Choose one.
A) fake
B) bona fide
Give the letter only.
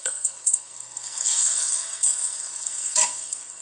A